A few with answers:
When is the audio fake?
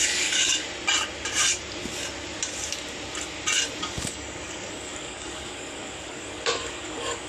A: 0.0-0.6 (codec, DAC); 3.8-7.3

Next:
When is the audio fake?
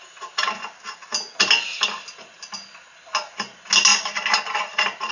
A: none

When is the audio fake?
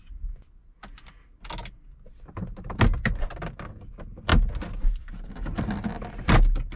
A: none